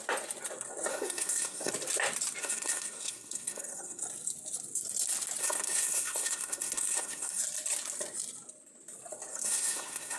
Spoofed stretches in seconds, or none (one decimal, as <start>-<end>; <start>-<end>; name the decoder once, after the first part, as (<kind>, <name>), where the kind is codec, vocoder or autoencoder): 0.9-1.7 (codec, SNAC); 2.4-4.0; 5.4-7.4; 9.3-10.2